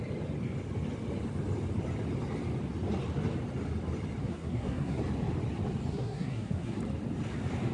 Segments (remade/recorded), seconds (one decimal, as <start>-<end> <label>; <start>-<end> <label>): 0.0-4.2 recorded; 4.2-5.0 remade; 5.0-5.9 recorded; 5.9-6.8 remade; 6.8-7.7 recorded

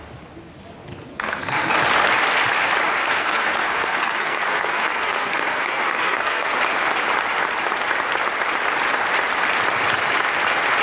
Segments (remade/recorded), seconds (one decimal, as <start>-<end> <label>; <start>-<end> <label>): 0.0-1.1 recorded; 1.1-1.7 remade; 1.7-3.0 recorded; 3.0-6.5 remade; 6.5-10.8 recorded